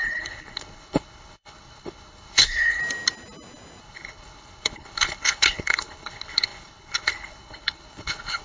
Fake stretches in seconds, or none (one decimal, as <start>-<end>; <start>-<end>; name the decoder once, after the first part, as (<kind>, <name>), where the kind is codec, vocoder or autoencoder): 0.0-2.8 (codec, HILCodec); 3.8-8.4